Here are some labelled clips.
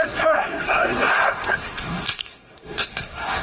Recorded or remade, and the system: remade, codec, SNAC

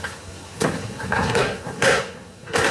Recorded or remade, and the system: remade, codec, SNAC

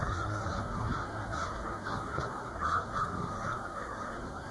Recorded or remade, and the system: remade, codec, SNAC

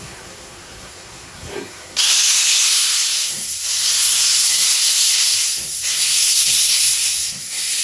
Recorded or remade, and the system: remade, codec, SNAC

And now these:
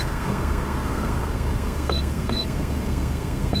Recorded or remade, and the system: remade, codec, SNAC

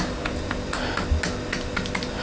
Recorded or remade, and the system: recorded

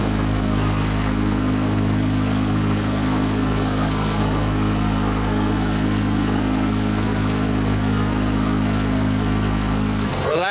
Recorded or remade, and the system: remade, codec, SNAC